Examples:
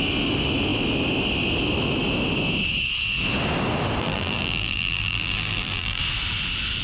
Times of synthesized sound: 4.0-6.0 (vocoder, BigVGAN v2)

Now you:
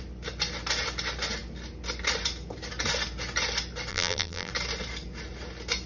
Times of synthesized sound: 3.9-4.5 (vocoder, BigVGAN v2)

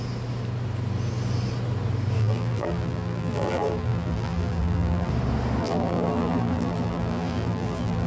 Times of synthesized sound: 2.2-5.1 (vocoder, BigVGAN v2); 5.6-8.1

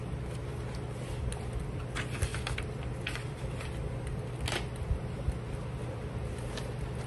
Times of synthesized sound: none

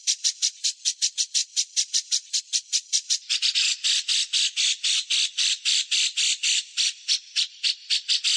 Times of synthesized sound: 0.0-3.5 (vocoder, BigVGAN v2); 5.2-8.4

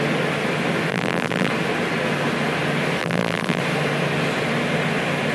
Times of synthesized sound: 0.9-1.5 (vocoder, BigVGAN v2); 3.0-3.6

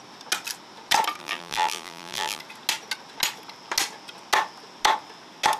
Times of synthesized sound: 1.2-2.4 (vocoder, BigVGAN v2)